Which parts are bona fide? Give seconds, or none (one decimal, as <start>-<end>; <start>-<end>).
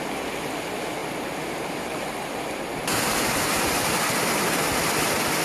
0.0-5.4